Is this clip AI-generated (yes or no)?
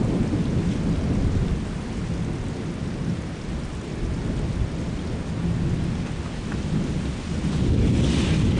no